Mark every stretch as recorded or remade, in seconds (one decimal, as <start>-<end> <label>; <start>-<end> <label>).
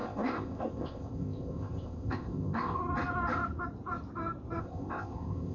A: 0.0-2.8 remade; 2.8-4.6 recorded; 4.6-5.5 remade